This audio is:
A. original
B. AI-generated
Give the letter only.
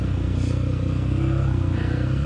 B